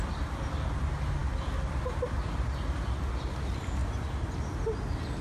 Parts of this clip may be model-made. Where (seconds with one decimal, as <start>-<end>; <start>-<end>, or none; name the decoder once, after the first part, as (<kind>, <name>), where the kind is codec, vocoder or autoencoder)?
none